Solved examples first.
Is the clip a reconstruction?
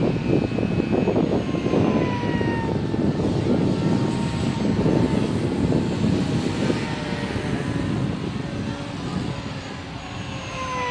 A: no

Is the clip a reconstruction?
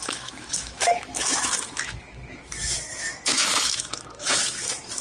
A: yes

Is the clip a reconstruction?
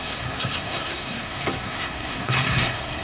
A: yes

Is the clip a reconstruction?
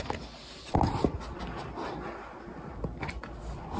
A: no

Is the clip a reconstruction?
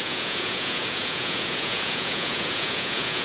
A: yes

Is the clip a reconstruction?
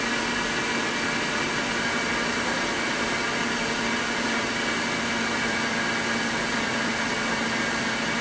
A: no